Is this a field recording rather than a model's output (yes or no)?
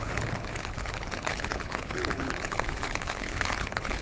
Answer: no